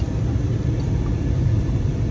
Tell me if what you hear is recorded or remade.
recorded